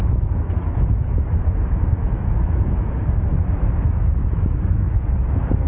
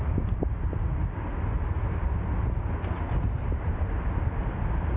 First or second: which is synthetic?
first